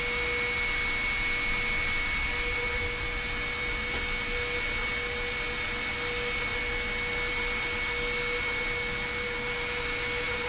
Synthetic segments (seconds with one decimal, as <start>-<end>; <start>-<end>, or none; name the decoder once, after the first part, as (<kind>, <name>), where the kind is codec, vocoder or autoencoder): none